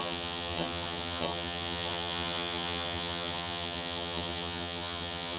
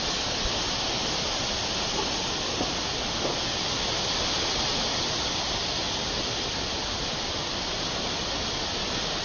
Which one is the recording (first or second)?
second